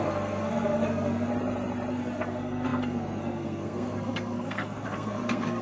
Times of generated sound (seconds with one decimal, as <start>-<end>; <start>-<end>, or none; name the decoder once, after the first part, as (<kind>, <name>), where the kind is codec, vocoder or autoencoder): 0.0-1.3 (codec, SNAC); 1.9-5.6

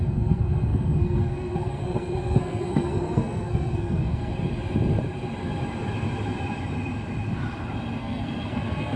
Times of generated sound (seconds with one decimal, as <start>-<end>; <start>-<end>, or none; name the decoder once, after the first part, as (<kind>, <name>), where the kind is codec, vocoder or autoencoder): 0.0-4.3 (codec, SNAC); 8.0-9.0